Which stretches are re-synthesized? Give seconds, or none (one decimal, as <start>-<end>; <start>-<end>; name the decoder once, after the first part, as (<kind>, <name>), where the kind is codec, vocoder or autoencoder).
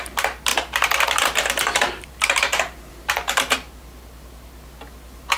0.5-3.7 (vocoder, BigVGAN v2)